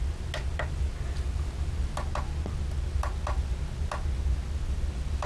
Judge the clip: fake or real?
real